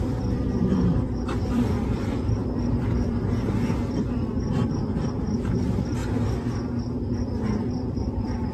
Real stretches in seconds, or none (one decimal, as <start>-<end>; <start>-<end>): 6.0-7.7